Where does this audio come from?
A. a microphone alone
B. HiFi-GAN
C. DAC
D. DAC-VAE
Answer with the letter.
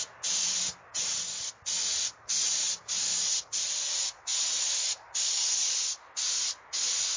A